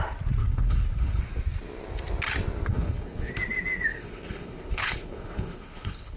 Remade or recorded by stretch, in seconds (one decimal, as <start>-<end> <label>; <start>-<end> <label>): 0.0-0.4 recorded; 0.4-1.2 remade; 1.2-2.7 recorded; 2.7-3.3 remade; 3.3-3.9 recorded; 3.9-6.2 remade